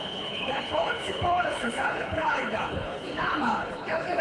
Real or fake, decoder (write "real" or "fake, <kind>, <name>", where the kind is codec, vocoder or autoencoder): fake, codec, HILCodec